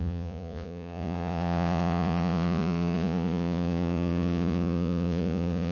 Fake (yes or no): yes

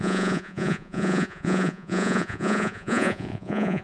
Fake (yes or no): yes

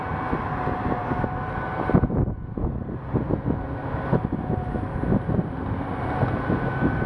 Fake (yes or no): no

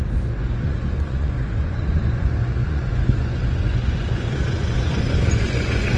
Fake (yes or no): yes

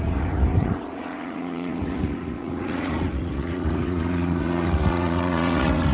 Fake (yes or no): yes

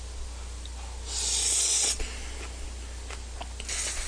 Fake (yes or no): no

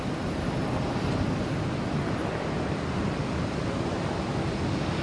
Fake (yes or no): no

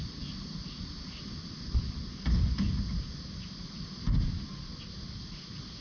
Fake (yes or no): no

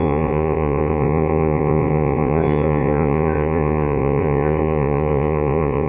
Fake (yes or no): yes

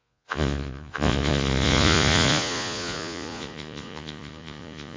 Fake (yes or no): yes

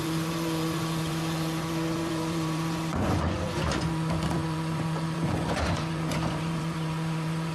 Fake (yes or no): yes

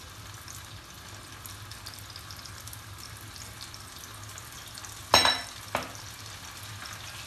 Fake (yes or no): no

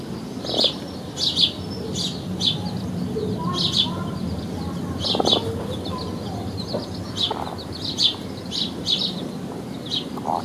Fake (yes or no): no